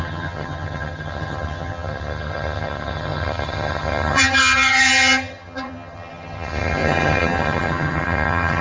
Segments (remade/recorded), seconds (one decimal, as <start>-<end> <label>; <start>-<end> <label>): 0.0-8.6 remade